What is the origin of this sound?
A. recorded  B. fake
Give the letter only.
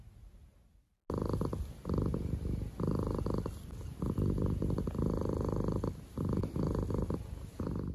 A